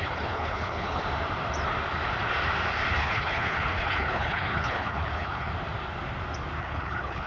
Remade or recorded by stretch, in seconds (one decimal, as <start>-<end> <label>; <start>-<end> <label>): 0.0-1.0 remade; 1.0-2.9 recorded; 2.9-5.5 remade; 5.5-6.6 recorded; 6.6-7.3 remade